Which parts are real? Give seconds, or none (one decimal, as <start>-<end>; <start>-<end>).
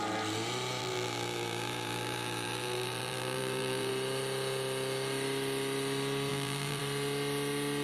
0.0-0.8; 3.9-6.3; 6.8-7.8